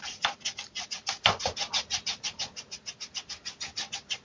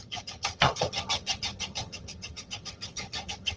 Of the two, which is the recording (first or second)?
first